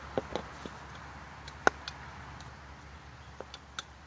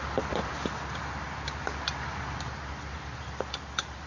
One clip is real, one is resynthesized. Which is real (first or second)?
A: first